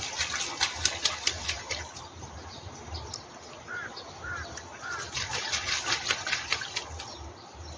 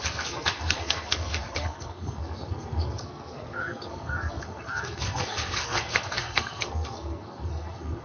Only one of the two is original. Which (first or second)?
first